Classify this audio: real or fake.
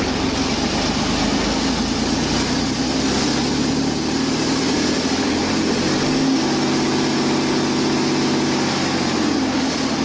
real